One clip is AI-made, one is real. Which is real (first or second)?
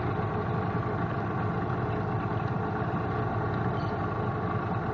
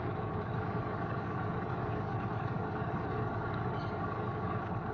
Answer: first